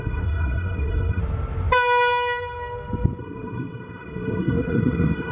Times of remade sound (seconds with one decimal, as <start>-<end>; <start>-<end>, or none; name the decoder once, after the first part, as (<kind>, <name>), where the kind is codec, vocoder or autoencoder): 0.0-1.2 (codec, SNAC); 3.2-5.3